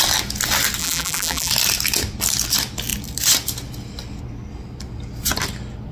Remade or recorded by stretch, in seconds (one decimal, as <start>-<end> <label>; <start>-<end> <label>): 0.0-0.8 recorded; 0.8-1.5 remade; 1.5-5.9 recorded